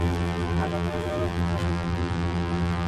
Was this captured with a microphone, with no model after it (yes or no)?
no